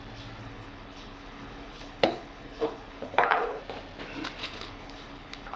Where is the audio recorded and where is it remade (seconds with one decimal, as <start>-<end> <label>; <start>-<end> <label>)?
0.0-0.4 recorded; 0.4-3.6 remade; 3.6-4.4 recorded; 4.4-5.6 remade